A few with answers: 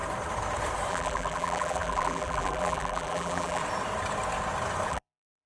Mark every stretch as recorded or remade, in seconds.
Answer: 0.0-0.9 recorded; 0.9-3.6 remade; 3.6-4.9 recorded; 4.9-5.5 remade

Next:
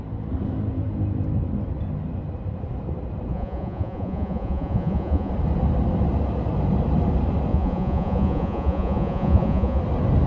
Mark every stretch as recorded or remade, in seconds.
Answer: 0.0-3.3 recorded; 3.3-5.3 remade; 5.3-7.5 recorded; 7.5-9.8 remade; 9.8-10.3 recorded

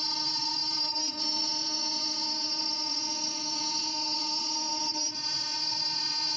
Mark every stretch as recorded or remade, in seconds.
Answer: 0.0-6.4 remade

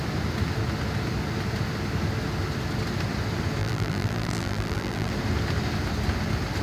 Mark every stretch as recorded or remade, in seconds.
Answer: 0.0-3.6 recorded; 3.6-5.1 remade; 5.1-6.6 recorded

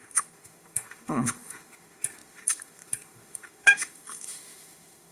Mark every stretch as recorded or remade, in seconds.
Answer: 0.0-5.1 remade

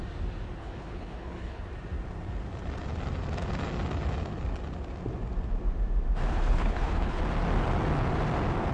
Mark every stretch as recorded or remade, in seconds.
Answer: 0.0-0.6 recorded; 0.6-1.6 remade; 1.6-6.3 recorded; 6.3-7.2 remade; 7.2-8.7 recorded

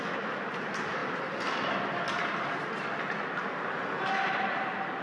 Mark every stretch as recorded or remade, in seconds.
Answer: 0.0-5.0 recorded

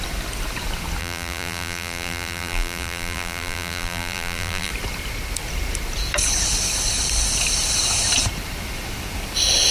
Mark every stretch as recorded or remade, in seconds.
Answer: 0.0-1.0 recorded; 1.0-4.7 remade; 4.7-9.7 recorded